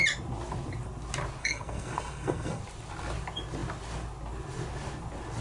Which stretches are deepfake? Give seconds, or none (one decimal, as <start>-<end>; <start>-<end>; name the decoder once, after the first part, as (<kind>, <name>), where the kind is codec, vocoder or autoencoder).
1.4-2.6 (codec, SNAC)